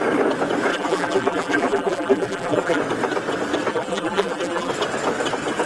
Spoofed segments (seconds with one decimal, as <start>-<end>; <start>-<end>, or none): 0.7-2.8; 3.7-4.7